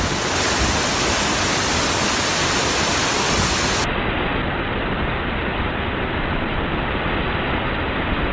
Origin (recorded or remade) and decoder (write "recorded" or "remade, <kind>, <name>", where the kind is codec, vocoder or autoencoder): recorded